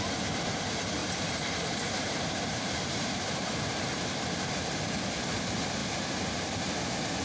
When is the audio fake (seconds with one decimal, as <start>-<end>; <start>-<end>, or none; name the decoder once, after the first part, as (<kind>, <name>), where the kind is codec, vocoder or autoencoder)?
1.0-4.5 (vocoder, BigVGAN v2); 5.8-6.5